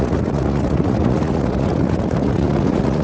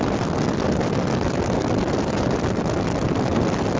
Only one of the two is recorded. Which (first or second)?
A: second